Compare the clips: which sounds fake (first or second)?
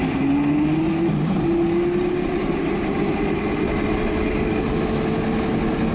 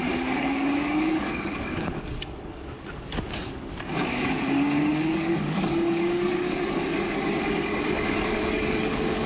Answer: second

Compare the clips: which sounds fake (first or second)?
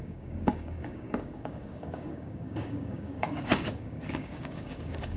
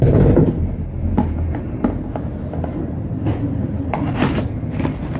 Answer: first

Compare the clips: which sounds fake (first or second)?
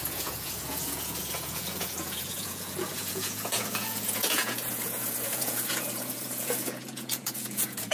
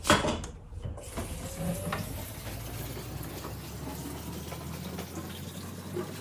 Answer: first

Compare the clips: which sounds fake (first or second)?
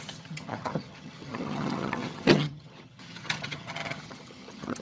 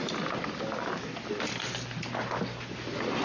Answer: first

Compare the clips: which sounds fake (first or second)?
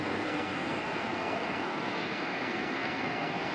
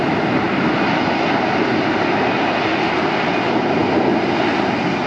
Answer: first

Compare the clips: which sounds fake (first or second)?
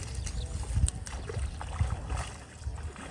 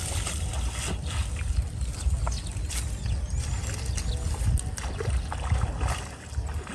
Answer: first